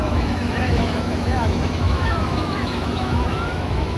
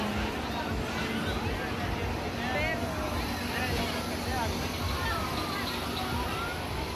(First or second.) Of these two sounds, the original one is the second